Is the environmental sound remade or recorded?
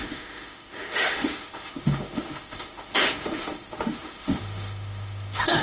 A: remade